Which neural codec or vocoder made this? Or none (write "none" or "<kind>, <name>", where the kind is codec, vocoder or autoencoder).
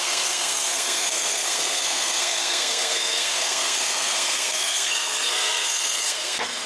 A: codec, SNAC